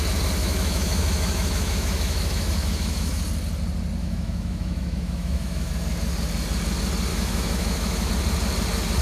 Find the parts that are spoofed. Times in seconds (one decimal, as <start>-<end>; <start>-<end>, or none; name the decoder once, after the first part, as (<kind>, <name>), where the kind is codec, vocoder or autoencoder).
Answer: 0.4-3.2 (autoencoder, DAC-VAE); 4.0-5.7; 7.1-8.1